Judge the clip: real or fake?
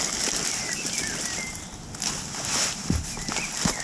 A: real